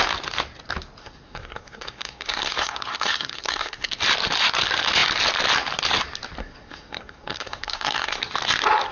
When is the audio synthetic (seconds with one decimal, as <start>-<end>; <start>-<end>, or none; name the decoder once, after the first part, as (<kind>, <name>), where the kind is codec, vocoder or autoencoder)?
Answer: 1.0-3.9 (codec, SNAC); 6.4-8.2